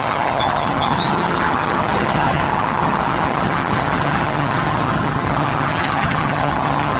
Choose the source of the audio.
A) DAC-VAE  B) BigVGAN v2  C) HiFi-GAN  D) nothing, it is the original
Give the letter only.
C